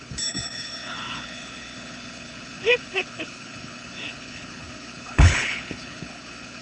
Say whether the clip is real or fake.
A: fake